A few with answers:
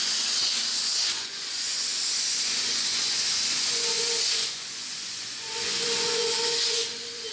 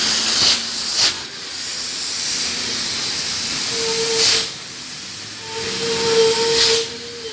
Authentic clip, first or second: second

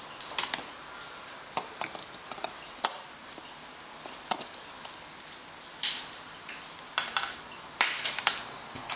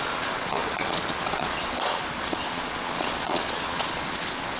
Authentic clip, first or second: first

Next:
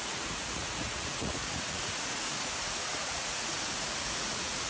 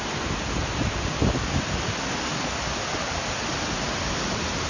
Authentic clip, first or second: second